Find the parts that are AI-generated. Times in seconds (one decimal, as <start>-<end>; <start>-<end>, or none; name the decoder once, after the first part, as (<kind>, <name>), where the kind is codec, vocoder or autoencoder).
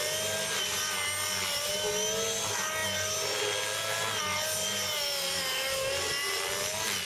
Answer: none